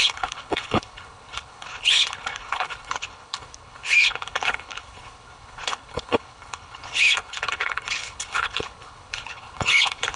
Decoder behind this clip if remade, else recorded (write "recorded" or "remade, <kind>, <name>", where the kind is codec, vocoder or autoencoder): remade, codec, HILCodec